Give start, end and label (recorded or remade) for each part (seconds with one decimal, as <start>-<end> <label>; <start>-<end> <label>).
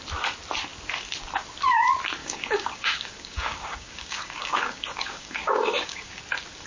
0.0-2.2 recorded; 2.2-6.2 remade; 6.2-6.7 recorded